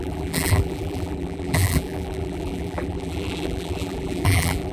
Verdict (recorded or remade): remade